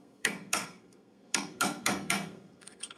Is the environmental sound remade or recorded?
remade